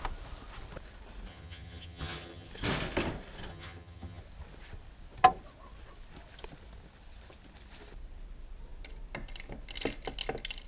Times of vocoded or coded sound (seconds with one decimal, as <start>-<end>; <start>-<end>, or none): 1.3-2.5; 3.5-4.2